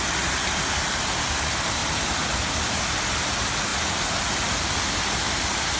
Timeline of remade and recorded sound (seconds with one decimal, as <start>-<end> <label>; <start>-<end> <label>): 0.0-5.8 recorded